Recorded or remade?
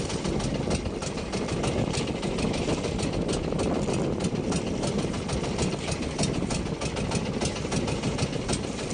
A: recorded